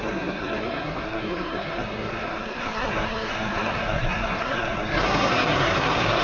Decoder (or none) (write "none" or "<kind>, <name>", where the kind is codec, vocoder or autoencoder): codec, SNAC